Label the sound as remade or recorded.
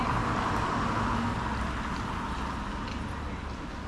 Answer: recorded